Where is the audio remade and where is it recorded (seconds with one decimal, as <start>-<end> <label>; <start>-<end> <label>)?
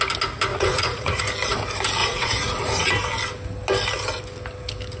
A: 0.0-0.5 recorded; 0.5-1.2 remade; 1.2-2.0 recorded; 2.0-2.9 remade; 2.9-5.0 recorded